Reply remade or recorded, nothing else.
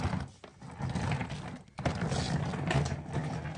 recorded